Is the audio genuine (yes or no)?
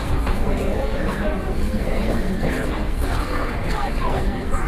no